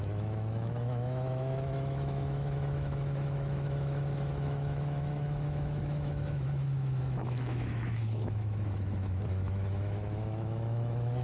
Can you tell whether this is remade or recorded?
remade